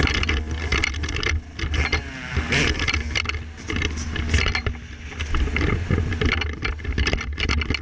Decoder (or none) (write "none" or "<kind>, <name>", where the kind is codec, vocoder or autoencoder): none